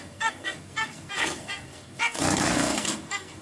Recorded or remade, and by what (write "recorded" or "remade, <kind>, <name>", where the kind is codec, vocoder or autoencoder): remade, codec, SNAC